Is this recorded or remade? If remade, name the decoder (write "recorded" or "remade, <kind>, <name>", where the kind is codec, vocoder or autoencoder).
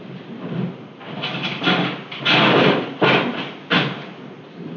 recorded